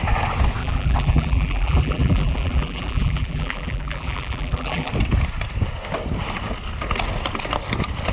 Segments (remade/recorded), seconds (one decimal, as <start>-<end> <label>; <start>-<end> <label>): 0.0-0.6 recorded; 0.6-4.9 remade; 4.9-8.1 recorded